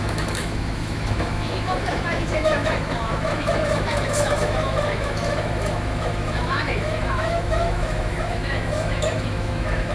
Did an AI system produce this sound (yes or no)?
yes